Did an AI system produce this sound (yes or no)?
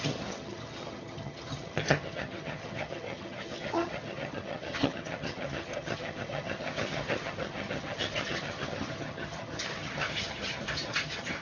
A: yes